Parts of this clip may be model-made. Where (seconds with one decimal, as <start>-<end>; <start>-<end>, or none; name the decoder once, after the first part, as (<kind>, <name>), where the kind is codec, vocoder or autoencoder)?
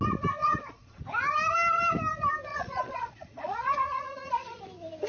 0.4-1.0 (vocoder, Vocos); 2.5-4.6